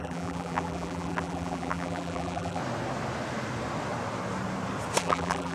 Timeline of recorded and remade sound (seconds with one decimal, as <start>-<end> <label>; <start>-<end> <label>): 0.0-2.6 remade; 2.6-5.0 recorded; 5.0-5.5 remade